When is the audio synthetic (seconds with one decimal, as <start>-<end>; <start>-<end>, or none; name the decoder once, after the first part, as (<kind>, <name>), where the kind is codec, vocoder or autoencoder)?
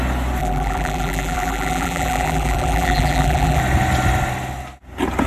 0.4-3.6 (vocoder, BigVGAN v2)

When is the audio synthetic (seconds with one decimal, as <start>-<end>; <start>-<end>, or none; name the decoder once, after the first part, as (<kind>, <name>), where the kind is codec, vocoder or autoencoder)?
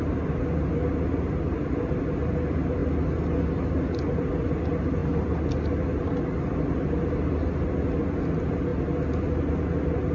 none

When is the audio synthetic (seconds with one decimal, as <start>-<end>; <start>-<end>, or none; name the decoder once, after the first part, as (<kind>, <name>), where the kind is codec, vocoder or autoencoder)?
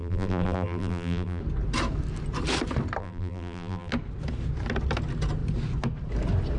0.0-1.4 (vocoder, BigVGAN v2); 3.0-3.9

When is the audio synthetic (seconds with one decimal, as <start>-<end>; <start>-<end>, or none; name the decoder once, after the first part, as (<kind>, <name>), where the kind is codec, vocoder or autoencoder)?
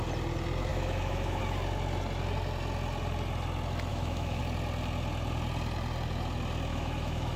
0.7-1.4 (autoencoder, DAC-VAE); 3.9-4.4; 6.7-7.4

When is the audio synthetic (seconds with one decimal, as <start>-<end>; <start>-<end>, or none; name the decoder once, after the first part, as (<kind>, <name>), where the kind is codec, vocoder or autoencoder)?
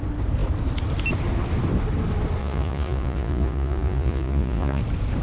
2.4-4.8 (vocoder, Vocos)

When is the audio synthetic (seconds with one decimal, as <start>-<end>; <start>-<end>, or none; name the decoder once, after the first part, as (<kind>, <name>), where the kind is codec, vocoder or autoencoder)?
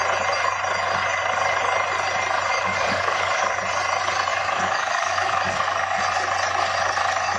2.5-3.6 (codec, DAC); 4.3-6.0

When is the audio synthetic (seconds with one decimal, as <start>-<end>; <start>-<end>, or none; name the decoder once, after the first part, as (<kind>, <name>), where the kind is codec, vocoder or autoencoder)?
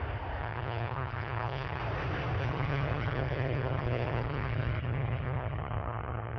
0.4-1.8 (vocoder, HiFi-GAN); 2.4-6.4